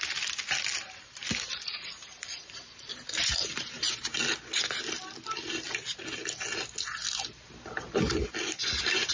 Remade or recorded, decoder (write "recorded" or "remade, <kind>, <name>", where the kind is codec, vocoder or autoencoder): recorded